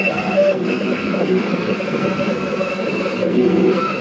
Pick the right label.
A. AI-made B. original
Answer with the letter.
A